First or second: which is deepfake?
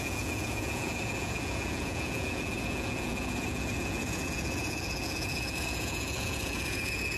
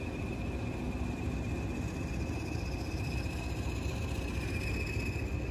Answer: first